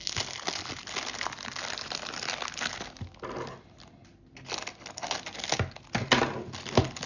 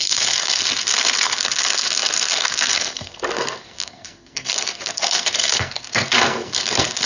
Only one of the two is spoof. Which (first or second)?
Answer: second